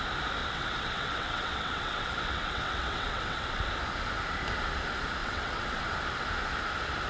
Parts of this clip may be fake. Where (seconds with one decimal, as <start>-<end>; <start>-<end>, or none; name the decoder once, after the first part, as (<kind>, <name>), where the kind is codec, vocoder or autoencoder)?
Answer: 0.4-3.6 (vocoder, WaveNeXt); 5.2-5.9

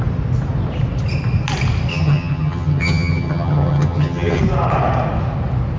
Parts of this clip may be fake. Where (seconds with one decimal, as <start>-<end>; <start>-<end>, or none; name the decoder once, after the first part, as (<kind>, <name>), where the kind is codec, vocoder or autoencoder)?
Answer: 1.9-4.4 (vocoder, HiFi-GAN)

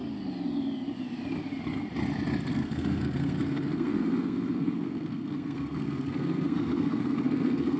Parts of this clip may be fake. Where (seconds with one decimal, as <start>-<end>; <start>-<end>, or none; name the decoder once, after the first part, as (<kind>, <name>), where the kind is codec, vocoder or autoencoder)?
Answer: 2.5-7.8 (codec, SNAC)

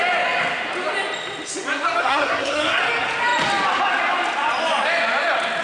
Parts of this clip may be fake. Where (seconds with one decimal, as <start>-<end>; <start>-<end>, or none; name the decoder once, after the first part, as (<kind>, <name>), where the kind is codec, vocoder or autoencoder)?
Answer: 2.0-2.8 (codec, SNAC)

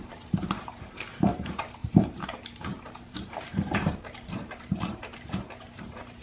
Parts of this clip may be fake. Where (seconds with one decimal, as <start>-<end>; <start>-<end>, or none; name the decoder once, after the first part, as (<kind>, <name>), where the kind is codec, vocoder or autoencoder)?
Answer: 0.0-6.2 (vocoder, BigVGAN v2)